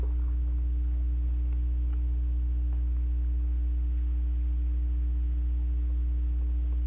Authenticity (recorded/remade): recorded